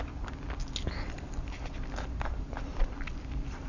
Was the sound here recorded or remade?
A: recorded